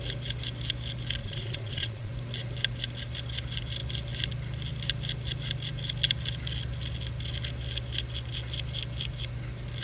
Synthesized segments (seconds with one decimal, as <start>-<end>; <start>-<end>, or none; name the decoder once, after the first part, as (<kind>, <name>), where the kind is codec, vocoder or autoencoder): 1.2-2.1 (vocoder, Vocos)